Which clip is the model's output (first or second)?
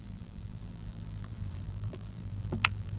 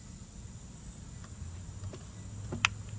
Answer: first